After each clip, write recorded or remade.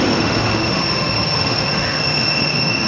remade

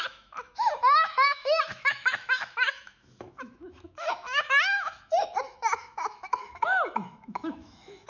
remade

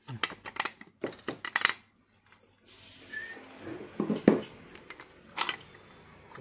recorded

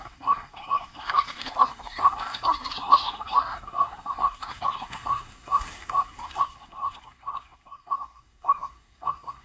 remade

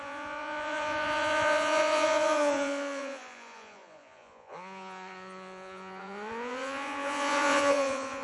remade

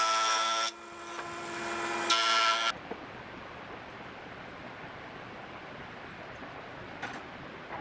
recorded